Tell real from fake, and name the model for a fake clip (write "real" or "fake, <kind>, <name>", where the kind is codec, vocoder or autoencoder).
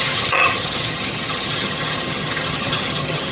fake, vocoder, HiFi-GAN